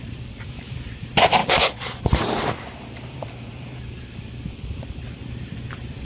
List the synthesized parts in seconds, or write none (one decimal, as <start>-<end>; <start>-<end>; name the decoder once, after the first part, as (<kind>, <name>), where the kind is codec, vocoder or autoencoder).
0.0-6.0 (vocoder, BigVGAN v2)